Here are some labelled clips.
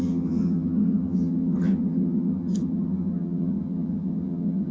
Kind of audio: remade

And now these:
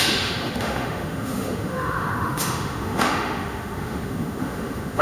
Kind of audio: remade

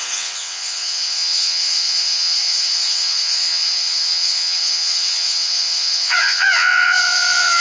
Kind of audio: remade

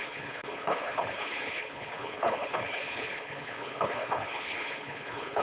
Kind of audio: remade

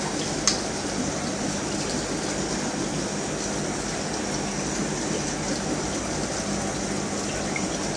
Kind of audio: recorded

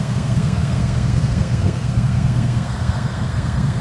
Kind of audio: remade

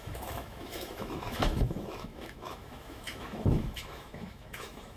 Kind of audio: remade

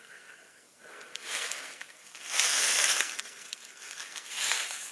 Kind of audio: remade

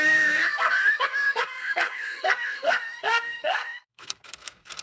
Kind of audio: remade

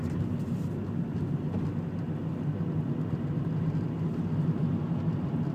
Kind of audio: recorded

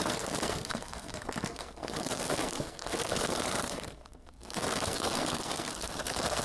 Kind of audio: remade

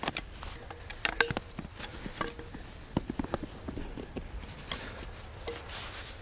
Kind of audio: recorded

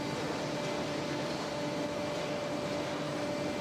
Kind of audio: recorded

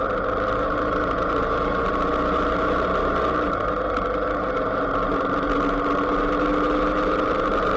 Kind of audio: recorded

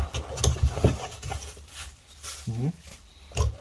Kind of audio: recorded